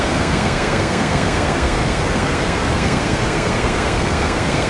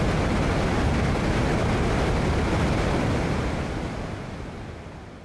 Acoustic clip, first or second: second